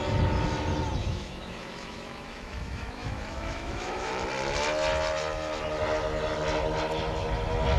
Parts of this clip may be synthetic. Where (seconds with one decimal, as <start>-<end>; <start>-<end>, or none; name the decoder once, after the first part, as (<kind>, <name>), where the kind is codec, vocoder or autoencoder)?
1.0-4.1 (autoencoder, DAC-VAE)